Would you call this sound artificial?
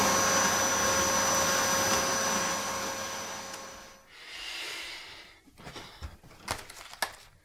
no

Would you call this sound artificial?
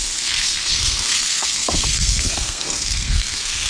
yes